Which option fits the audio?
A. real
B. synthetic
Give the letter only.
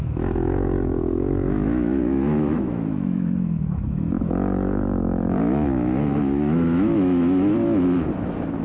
B